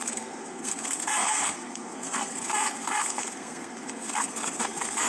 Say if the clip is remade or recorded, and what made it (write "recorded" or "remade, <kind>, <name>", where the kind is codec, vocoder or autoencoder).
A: remade, codec, SNAC